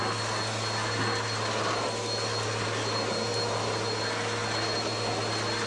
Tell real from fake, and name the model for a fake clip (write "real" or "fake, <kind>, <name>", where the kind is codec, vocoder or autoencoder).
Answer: real